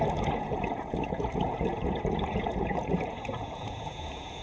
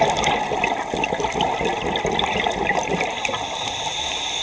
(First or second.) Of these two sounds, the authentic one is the second